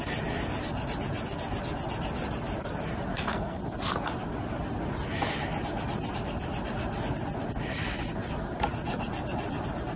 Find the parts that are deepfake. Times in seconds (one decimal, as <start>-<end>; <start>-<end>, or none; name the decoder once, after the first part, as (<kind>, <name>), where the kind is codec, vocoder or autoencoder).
3.1-3.6 (codec, SNAC)